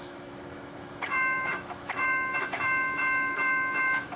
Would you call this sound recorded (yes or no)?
no